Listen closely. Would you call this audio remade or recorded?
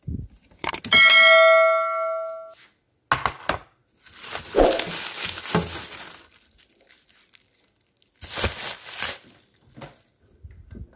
recorded